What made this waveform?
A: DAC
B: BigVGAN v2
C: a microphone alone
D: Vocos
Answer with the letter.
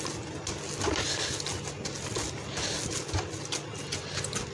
C